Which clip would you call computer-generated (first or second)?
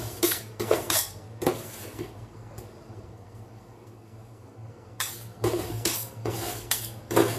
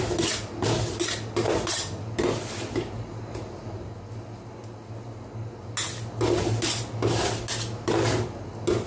first